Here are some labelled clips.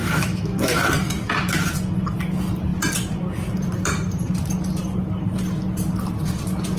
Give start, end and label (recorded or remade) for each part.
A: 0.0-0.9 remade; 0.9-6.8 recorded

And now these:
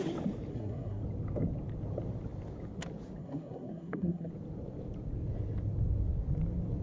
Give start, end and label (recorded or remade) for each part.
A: 0.0-0.5 recorded; 0.5-1.0 remade; 1.0-3.2 recorded; 3.2-4.3 remade; 4.3-6.8 recorded

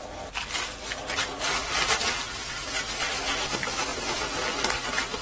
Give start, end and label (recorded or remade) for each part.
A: 0.0-5.2 recorded

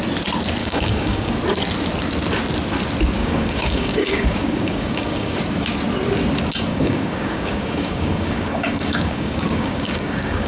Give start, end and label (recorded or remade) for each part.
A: 0.0-0.6 recorded; 0.6-1.3 remade; 1.3-3.2 recorded; 3.2-5.4 remade; 5.4-6.7 recorded; 6.7-10.5 remade

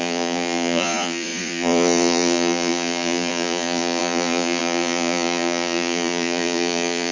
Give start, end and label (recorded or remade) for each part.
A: 0.0-7.1 remade

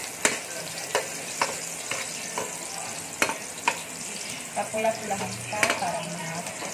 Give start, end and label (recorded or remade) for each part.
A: 0.0-4.7 recorded; 4.7-6.7 remade

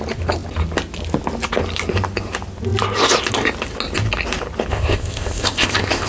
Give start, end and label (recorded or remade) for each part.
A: 0.0-4.7 recorded; 4.7-6.1 remade